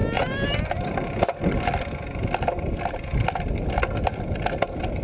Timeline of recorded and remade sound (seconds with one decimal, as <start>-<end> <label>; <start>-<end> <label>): 0.0-5.0 recorded